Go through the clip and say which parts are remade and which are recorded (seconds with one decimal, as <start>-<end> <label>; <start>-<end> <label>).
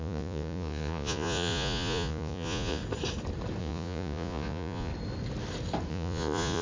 0.0-2.8 remade; 2.8-3.6 recorded; 3.6-4.9 remade; 4.9-5.9 recorded; 5.9-6.6 remade